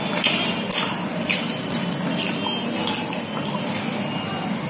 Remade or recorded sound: recorded